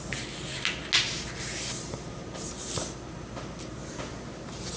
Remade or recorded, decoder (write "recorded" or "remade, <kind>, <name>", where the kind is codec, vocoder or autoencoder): recorded